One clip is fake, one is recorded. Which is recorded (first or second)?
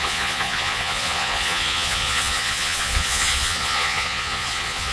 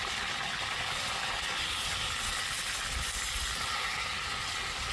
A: second